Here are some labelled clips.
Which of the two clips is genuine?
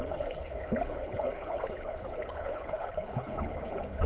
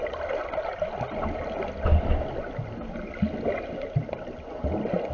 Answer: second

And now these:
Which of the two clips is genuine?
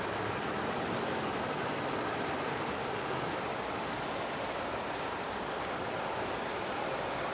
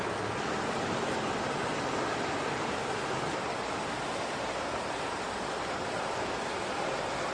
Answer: second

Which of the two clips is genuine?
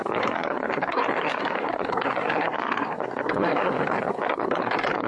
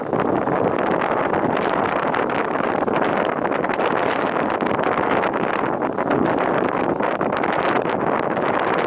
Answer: second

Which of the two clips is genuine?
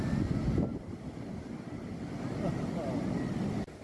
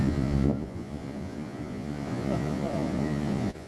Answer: first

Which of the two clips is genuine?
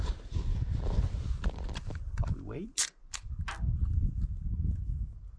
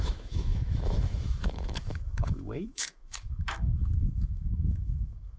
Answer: first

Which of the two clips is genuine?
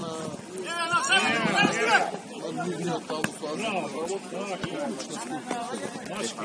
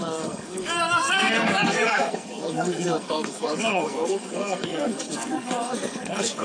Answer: first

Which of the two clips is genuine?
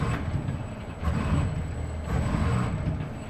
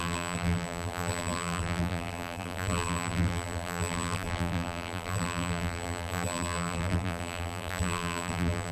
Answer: first